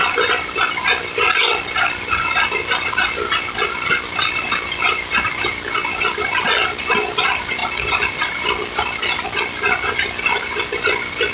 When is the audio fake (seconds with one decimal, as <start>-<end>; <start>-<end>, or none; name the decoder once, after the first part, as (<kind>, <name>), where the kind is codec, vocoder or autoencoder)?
none